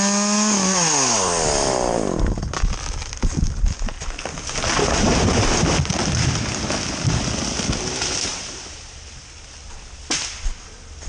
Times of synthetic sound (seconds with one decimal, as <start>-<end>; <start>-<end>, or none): none